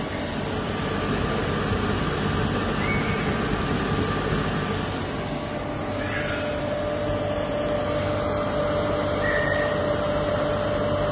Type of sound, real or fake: real